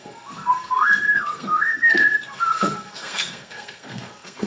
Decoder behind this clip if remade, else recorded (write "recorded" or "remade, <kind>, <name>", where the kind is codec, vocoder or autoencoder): remade, codec, SNAC